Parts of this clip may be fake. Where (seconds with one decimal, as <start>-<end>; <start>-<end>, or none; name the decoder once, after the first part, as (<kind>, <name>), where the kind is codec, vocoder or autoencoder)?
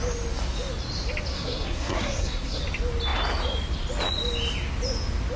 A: 1.3-2.6 (codec, SNAC)